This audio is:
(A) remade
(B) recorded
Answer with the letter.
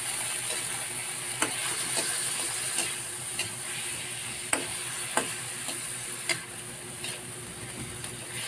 B